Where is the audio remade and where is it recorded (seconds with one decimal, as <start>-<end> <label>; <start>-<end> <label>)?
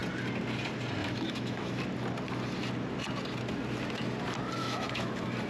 0.0-1.0 recorded; 1.0-1.8 remade; 1.8-4.6 recorded; 4.6-5.1 remade; 5.1-5.5 recorded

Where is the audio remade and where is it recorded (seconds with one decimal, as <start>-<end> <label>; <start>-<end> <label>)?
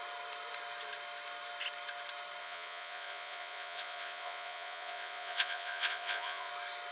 0.0-2.4 recorded; 2.4-6.5 remade; 6.5-6.9 recorded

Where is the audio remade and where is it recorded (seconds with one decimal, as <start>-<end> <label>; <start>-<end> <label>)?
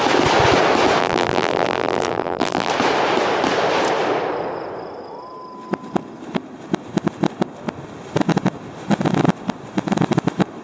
0.0-1.0 recorded; 1.0-2.7 remade; 2.7-10.6 recorded